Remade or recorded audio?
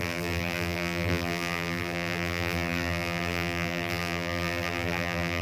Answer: remade